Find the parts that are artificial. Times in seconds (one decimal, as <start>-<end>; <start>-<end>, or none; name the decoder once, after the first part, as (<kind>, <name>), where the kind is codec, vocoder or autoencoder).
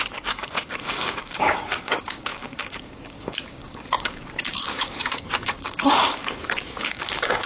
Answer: 0.0-7.5 (codec, DAC)